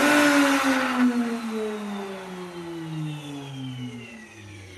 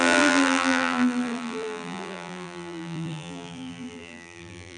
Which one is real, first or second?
first